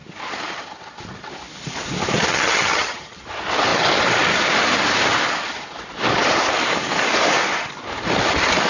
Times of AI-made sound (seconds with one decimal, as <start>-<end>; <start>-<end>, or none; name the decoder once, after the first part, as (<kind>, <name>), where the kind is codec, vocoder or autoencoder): 2.3-3.2 (vocoder, HiFi-GAN)